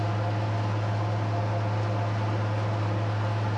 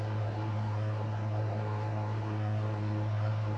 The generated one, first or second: second